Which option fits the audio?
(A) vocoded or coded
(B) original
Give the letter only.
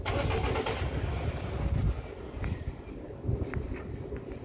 B